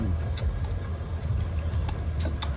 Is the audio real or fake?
real